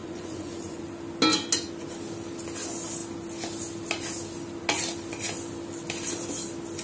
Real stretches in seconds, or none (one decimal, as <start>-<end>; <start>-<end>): 0.8-6.8